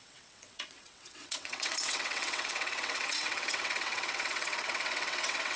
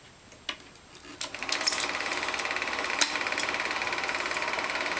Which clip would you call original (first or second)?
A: second